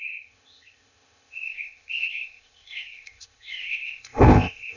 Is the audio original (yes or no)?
no